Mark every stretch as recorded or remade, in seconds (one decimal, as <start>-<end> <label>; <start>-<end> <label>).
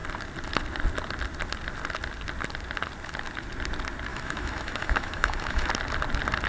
0.0-4.1 recorded; 4.1-5.7 remade; 5.7-6.5 recorded